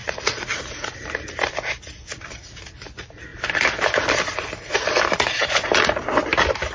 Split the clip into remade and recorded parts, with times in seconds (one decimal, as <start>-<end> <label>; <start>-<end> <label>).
0.0-0.6 remade; 0.6-6.7 recorded